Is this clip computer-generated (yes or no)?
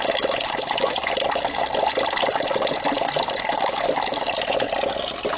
no